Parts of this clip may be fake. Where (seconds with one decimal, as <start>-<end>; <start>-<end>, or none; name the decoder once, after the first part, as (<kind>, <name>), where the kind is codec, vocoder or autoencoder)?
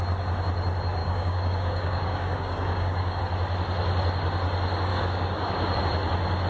1.0-3.2 (codec, DAC); 4.9-5.8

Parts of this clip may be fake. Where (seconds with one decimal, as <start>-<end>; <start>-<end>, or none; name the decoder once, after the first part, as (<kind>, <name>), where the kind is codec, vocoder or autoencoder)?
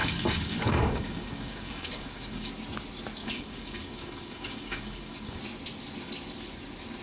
0.0-2.5 (codec, DAC); 3.2-5.4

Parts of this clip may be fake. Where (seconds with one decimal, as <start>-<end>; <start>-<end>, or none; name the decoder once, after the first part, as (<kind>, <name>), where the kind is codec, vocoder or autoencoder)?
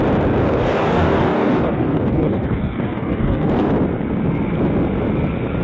0.4-3.7 (codec, DAC)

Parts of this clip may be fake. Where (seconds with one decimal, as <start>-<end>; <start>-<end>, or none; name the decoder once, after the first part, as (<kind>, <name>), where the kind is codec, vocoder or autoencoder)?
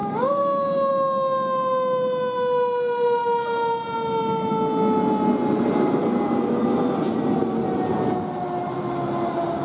0.0-0.9 (codec, DAC)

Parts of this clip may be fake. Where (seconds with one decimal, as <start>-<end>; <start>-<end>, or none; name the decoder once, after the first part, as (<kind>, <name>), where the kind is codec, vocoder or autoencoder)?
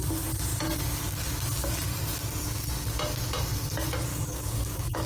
4.1-5.1 (codec, DAC)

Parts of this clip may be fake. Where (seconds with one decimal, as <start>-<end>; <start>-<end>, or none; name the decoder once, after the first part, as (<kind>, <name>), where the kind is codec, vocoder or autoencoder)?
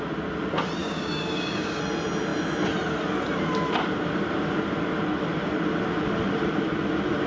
0.8-1.8 (codec, DAC)